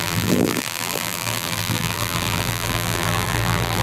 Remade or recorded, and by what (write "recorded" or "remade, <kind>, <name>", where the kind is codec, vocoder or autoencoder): remade, vocoder, BigVGAN v2